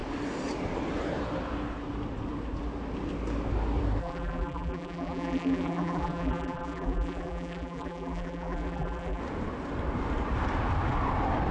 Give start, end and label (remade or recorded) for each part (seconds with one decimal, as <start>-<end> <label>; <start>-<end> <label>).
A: 0.0-4.0 recorded; 4.0-9.2 remade; 9.2-11.5 recorded

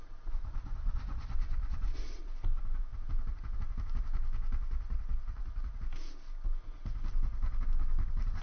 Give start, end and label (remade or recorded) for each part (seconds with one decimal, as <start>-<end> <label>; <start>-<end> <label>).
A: 0.0-2.2 remade; 2.2-8.4 recorded

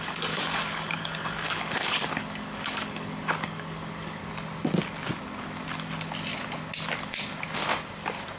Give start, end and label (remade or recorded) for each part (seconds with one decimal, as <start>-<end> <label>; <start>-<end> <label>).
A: 0.0-4.2 remade; 4.2-8.4 recorded

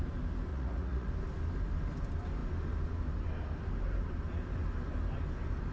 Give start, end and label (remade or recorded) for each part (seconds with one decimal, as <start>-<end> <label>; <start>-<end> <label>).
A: 0.0-0.5 recorded; 0.5-1.1 remade; 1.1-5.7 recorded

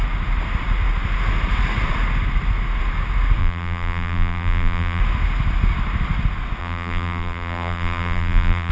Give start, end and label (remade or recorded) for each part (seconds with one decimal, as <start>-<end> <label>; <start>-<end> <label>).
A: 0.0-3.4 recorded; 3.4-5.0 remade; 5.0-6.6 recorded; 6.6-8.7 remade

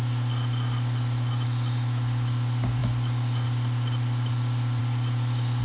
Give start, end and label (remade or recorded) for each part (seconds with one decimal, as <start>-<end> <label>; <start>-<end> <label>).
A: 0.0-5.6 recorded